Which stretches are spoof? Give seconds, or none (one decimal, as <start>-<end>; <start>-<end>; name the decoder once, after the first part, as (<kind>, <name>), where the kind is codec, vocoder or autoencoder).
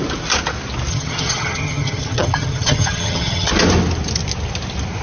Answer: 0.9-3.5 (vocoder, HiFi-GAN)